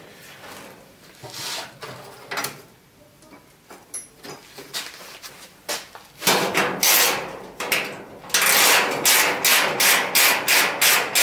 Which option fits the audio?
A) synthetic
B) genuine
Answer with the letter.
B